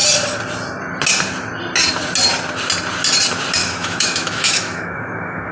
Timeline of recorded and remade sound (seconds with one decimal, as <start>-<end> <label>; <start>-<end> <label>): 0.0-3.6 recorded; 3.6-5.5 remade